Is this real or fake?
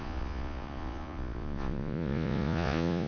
fake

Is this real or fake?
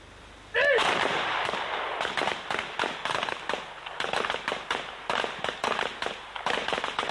real